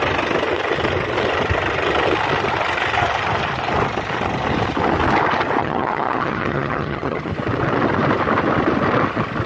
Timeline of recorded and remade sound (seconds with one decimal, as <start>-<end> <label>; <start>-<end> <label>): 0.0-5.6 recorded; 5.6-7.3 remade; 7.3-9.5 recorded